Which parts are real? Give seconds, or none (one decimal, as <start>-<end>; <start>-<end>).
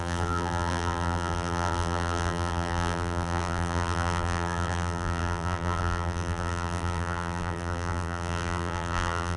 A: none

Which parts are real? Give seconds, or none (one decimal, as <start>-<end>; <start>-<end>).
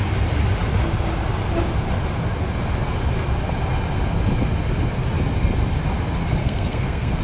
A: 0.0-6.4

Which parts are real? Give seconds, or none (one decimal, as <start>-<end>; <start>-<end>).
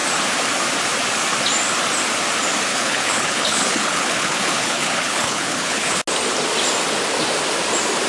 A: 0.0-2.7; 6.0-8.1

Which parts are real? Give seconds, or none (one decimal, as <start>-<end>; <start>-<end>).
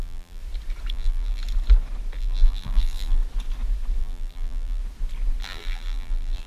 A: 0.4-0.9; 1.4-2.2; 3.2-4.0; 4.8-5.4